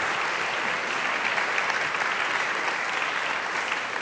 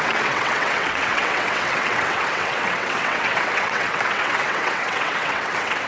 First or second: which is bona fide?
first